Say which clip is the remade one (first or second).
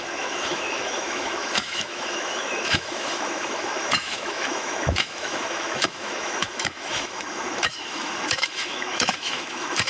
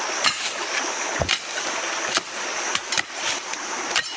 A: first